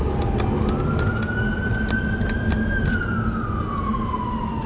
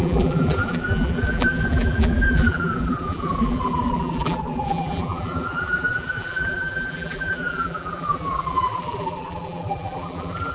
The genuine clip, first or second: first